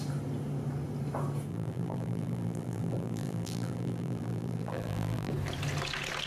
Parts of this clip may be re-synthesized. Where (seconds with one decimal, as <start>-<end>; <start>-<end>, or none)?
1.5-5.3